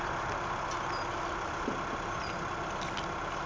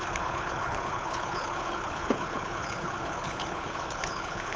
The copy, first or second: second